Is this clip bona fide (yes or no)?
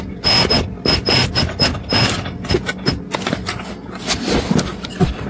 yes